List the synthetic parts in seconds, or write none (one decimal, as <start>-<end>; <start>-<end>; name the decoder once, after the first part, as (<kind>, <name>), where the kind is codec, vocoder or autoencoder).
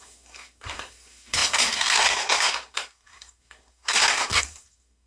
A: 0.0-5.1 (codec, SNAC)